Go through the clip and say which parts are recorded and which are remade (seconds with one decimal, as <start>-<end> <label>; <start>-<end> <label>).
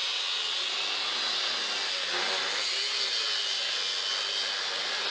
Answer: 0.0-5.1 recorded